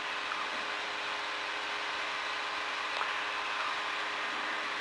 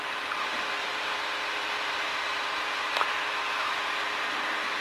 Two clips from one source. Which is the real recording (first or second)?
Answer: first